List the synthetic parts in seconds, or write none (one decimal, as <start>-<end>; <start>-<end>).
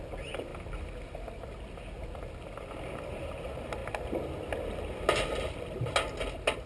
none